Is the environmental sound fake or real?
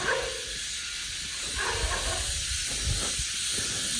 real